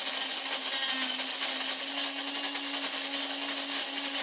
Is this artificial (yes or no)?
no